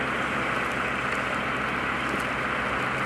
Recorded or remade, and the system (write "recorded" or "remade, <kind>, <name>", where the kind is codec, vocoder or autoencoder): recorded